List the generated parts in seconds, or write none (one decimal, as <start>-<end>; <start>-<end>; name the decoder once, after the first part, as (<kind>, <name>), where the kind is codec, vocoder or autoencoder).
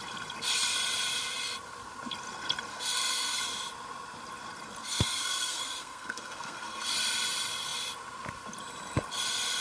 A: 2.7-3.4 (codec, SNAC); 4.8-6.9